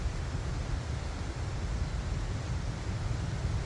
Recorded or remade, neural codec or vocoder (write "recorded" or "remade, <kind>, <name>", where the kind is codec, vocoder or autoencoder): recorded